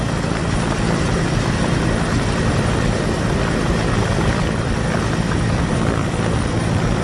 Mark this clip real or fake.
real